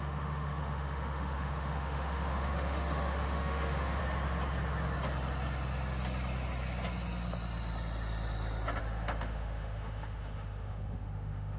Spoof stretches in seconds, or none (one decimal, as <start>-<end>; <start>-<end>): 0.0-4.0; 8.8-11.6